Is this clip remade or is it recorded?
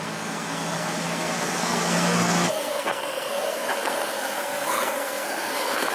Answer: remade